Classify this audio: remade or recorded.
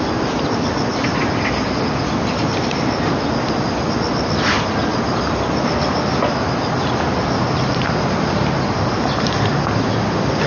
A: recorded